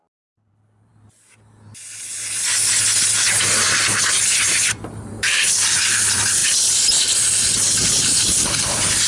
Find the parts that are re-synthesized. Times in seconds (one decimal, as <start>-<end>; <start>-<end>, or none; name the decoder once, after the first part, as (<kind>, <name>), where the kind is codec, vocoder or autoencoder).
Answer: 0.0-0.9 (vocoder, BigVGAN v2); 3.4-6.4; 8.7-9.1